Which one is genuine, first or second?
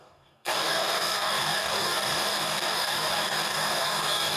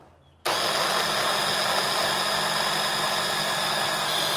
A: second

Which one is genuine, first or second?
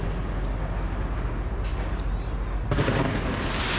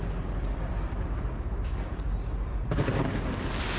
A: first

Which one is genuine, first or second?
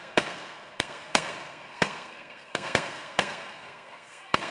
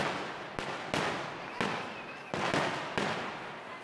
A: second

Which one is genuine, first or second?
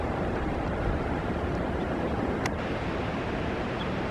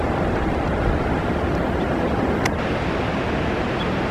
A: second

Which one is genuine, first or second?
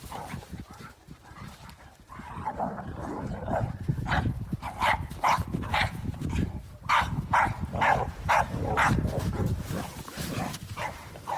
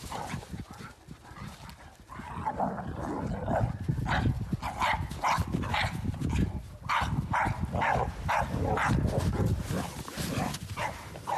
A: second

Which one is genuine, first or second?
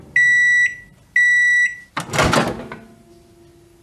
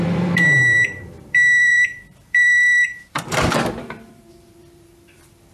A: first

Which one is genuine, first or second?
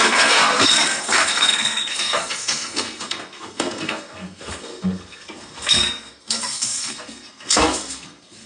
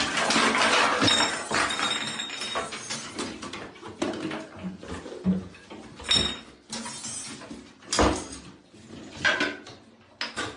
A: second